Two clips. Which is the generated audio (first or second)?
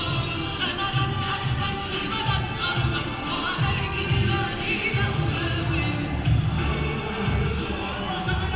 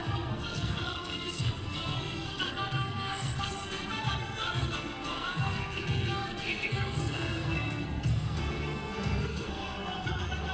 second